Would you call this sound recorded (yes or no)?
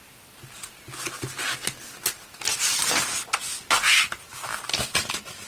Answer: yes